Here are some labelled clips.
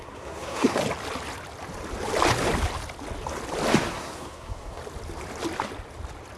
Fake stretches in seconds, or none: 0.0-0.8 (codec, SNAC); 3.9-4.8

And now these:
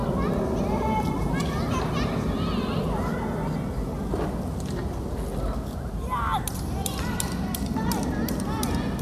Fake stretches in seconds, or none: none

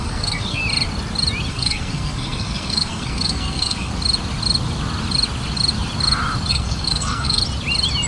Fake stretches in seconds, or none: 0.0-0.6 (codec, SNAC); 1.5-3.9; 6.5-7.4

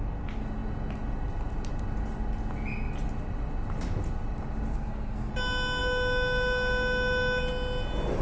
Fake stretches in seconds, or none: 4.7-5.3 (codec, SNAC)

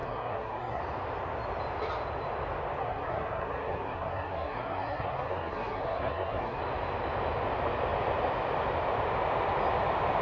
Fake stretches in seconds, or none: 0.0-0.8 (codec, SNAC); 2.8-6.6

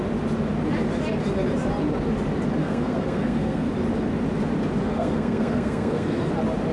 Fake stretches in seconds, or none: 2.6-3.7 (codec, SNAC); 4.8-6.3

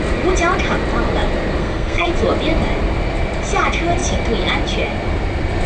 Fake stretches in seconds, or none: 1.6-2.1 (codec, SNAC)